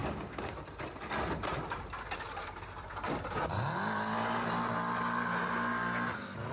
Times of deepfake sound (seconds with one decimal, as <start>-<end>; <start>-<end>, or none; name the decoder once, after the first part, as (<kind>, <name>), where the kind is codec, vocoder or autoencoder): 0.0-0.5 (codec, DAC)

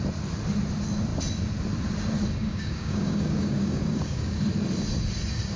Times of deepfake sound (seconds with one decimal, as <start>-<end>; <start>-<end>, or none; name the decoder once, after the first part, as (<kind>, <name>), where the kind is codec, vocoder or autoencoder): 2.4-4.4 (codec, DAC)

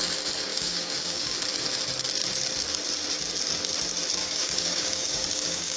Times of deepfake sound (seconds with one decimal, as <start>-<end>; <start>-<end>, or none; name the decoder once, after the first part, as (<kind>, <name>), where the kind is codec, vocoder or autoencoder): 0.5-1.4 (codec, DAC); 4.2-5.8

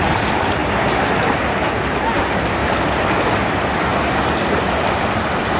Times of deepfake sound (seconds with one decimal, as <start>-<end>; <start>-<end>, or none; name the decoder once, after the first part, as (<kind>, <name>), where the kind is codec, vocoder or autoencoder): none

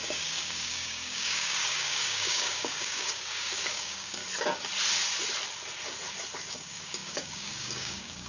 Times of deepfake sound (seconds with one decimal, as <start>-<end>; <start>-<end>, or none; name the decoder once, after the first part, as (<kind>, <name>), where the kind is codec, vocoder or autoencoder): 0.0-4.2 (codec, DAC); 6.5-8.3